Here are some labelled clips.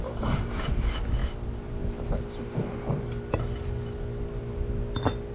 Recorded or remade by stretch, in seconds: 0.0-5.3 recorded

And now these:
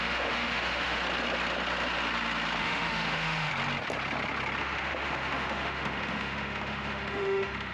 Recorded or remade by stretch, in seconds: 0.0-1.0 remade; 1.0-2.6 recorded; 2.6-3.5 remade; 3.5-4.6 recorded; 4.6-7.7 remade

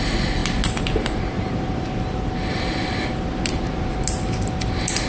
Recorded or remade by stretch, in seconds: 0.0-5.1 recorded

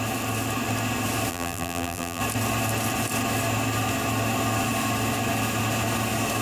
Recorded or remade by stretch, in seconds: 0.0-1.3 recorded; 1.3-2.2 remade; 2.2-6.4 recorded

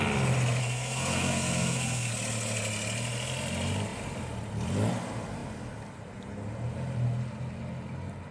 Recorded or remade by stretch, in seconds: 0.0-0.6 recorded; 0.6-2.1 remade; 2.1-8.3 recorded

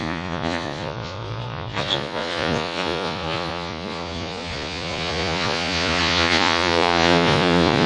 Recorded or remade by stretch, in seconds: 0.0-7.9 remade

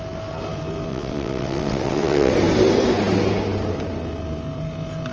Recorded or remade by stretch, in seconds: 0.0-0.9 recorded; 0.9-2.3 remade; 2.3-5.1 recorded

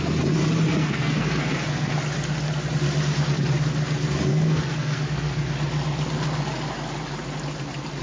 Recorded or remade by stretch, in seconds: 0.0-0.7 recorded; 0.7-1.9 remade; 1.9-4.3 recorded; 4.3-5.5 remade; 5.5-8.0 recorded